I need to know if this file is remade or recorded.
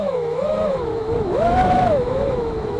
remade